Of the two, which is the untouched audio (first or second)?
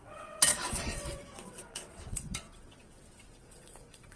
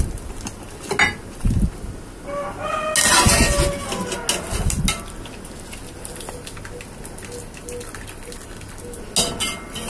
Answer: second